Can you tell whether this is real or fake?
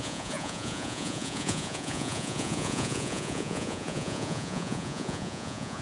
fake